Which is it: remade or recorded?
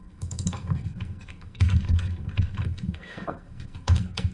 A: remade